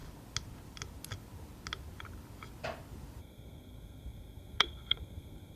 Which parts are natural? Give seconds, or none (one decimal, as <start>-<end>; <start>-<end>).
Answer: 0.0-3.2